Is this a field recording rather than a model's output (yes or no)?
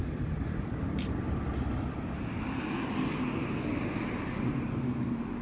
yes